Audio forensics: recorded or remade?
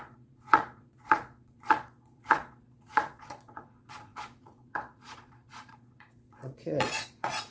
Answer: remade